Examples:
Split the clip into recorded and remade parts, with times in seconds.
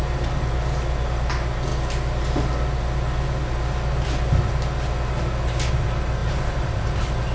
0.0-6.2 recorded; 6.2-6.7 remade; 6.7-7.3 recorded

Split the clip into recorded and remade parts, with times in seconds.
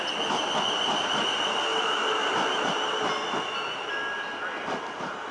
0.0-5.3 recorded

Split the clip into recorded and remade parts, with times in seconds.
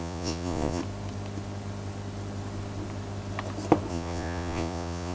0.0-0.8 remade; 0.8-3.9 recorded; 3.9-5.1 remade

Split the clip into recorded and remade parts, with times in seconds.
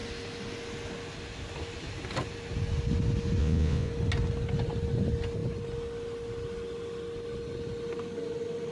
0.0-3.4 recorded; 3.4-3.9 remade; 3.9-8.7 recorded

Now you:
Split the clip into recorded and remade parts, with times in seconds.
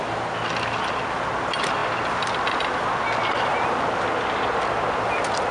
0.0-5.5 recorded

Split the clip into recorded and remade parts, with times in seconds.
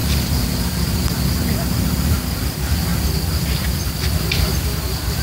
0.0-1.3 remade; 1.3-5.2 recorded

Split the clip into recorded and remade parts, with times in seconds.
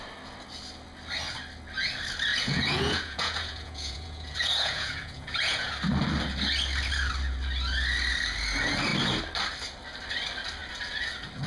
0.0-2.3 recorded; 2.3-5.7 remade; 5.7-11.5 recorded